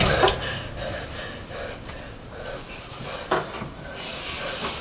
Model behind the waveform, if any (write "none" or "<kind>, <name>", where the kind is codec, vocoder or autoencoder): none